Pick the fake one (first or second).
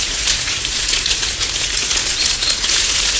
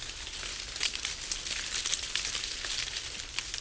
first